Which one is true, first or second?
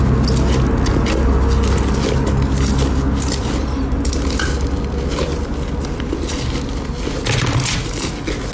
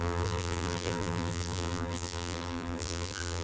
first